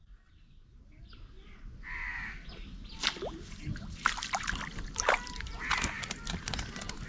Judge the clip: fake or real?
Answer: real